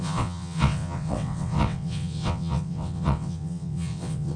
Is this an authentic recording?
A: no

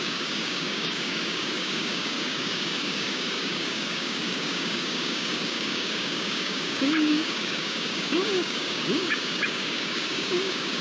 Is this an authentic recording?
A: no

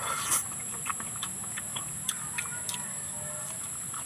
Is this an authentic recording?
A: yes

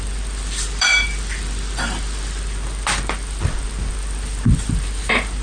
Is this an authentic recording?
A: no